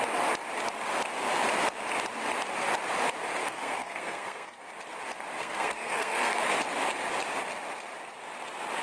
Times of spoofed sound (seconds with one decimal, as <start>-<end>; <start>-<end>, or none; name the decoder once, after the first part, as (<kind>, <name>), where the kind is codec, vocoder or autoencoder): 3.4-4.6 (codec, SNAC); 5.4-6.4